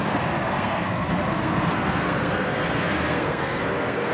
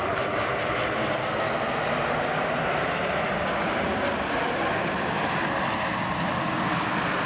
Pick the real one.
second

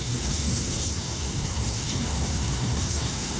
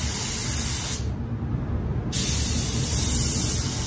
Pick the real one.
second